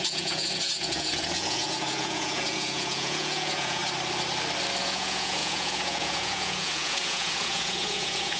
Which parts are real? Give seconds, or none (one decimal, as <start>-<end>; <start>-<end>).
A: 3.8-4.8